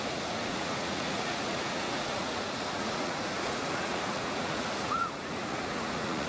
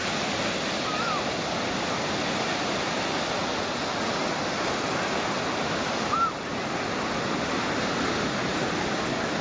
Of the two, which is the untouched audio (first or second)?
second